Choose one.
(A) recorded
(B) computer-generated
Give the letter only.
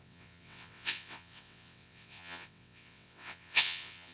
B